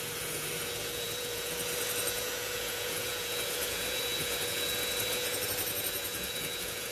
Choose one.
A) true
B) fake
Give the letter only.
B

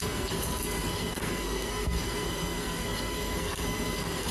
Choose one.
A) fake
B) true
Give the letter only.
A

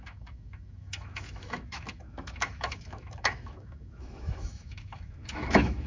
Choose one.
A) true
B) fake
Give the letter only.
B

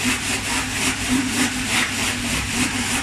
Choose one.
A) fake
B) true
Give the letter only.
B